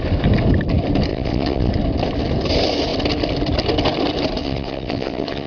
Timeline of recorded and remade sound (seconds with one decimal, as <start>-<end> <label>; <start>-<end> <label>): 0.0-1.1 recorded; 1.1-1.7 remade; 1.7-4.4 recorded; 4.4-5.5 remade